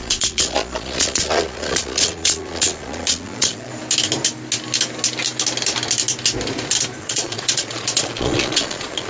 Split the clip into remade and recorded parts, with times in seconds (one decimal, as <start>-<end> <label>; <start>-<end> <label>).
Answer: 0.0-3.7 remade; 3.7-7.0 recorded; 7.0-9.1 remade